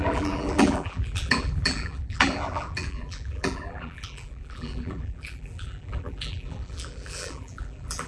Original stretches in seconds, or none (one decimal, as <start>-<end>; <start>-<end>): none